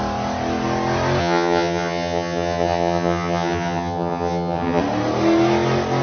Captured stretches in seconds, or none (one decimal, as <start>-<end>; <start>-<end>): 0.0-1.2; 4.8-6.0